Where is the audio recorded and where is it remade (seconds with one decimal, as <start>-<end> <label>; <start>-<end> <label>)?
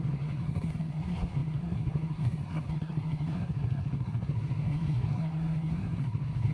0.0-6.5 remade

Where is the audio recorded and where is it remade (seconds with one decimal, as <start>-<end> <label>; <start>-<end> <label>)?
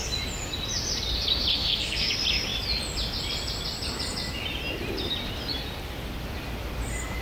0.0-1.5 recorded; 1.5-2.1 remade; 2.1-7.2 recorded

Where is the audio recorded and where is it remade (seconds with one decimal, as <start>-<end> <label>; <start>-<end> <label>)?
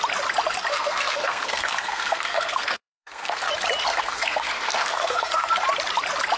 0.0-0.7 recorded; 0.7-3.5 remade; 3.5-3.9 recorded; 3.9-5.5 remade; 5.5-6.4 recorded